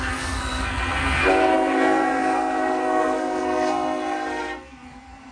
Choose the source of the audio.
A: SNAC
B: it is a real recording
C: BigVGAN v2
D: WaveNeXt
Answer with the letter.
A